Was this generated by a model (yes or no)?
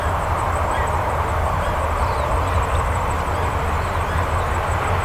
yes